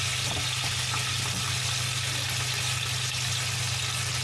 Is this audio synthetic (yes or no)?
no